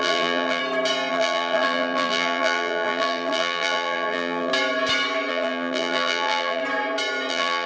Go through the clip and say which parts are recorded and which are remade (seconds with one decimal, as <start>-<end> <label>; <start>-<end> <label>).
0.0-0.6 remade; 0.6-1.1 recorded; 1.1-4.5 remade; 4.5-5.3 recorded; 5.3-6.6 remade; 6.6-7.3 recorded; 7.3-7.7 remade